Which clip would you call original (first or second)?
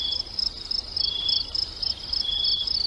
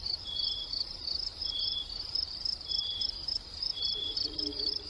first